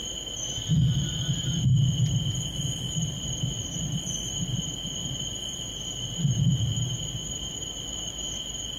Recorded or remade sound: remade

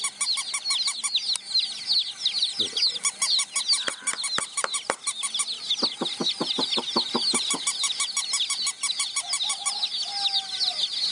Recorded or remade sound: recorded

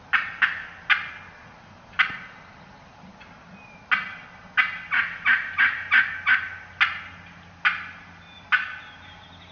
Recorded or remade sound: recorded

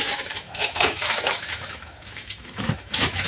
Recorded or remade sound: remade